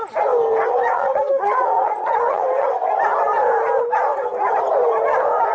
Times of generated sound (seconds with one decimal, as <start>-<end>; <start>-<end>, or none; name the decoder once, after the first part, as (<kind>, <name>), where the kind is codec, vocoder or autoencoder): 0.7-2.7 (vocoder, Vocos)